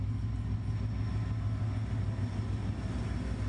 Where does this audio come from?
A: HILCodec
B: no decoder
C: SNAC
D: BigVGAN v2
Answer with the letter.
B